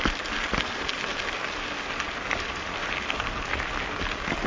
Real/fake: real